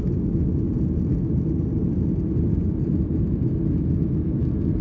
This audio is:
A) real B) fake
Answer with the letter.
A